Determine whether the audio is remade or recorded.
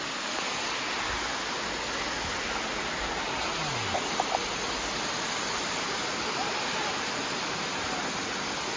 recorded